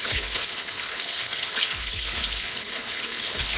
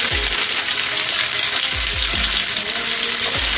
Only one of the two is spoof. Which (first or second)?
first